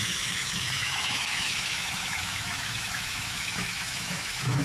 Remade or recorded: remade